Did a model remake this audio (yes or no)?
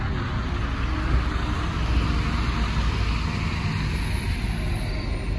no